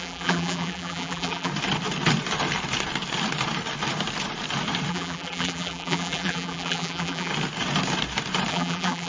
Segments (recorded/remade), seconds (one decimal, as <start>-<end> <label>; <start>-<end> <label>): 0.0-1.5 remade; 1.5-4.9 recorded; 4.9-7.3 remade; 7.3-8.5 recorded; 8.5-9.1 remade